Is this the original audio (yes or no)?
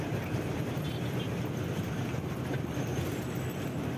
no